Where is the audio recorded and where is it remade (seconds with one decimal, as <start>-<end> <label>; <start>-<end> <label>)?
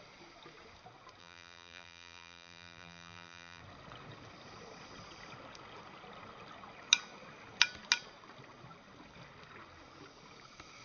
0.0-1.2 recorded; 1.2-3.6 remade; 3.6-10.8 recorded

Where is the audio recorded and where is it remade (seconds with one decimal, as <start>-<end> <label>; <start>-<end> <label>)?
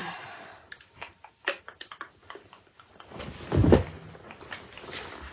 0.0-3.2 remade; 3.2-3.6 recorded; 3.6-4.4 remade; 4.4-5.3 recorded